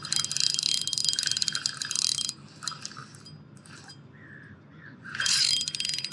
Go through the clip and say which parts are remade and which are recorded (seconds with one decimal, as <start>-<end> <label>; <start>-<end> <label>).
0.0-4.7 recorded; 4.7-5.5 remade; 5.5-6.1 recorded